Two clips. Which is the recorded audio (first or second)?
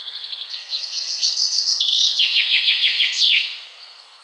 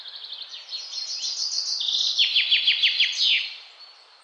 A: second